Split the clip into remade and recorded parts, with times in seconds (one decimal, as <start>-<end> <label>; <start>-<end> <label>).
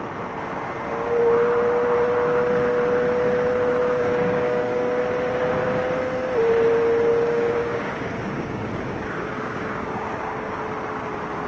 0.0-3.8 recorded; 3.8-5.0 remade; 5.0-7.1 recorded; 7.1-10.6 remade; 10.6-11.5 recorded